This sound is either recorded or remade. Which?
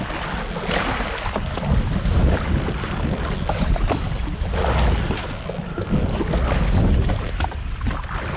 recorded